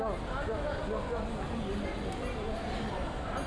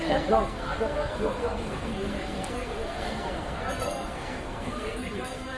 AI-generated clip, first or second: second